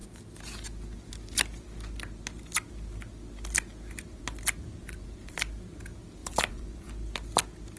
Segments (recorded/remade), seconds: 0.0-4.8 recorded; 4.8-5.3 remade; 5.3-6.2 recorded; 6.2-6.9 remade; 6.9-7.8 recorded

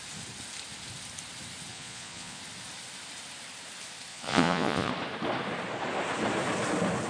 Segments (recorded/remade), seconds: 0.0-1.7 recorded; 1.7-2.4 remade; 2.4-4.1 recorded; 4.1-4.9 remade; 4.9-7.1 recorded

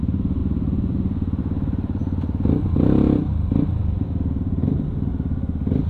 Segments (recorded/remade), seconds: 0.0-5.9 recorded

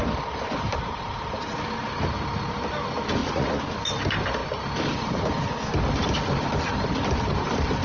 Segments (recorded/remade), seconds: 0.0-3.2 recorded; 3.2-3.7 remade; 3.7-7.8 recorded